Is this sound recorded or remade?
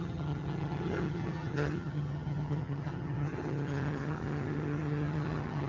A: remade